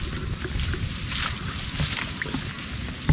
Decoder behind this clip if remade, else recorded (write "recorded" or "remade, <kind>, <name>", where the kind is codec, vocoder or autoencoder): recorded